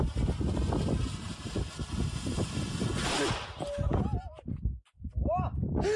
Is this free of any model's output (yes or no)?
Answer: yes